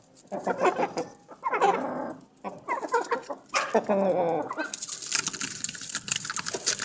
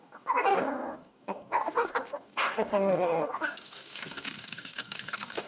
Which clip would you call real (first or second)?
first